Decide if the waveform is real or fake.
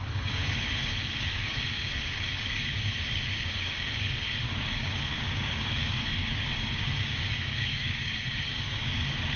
fake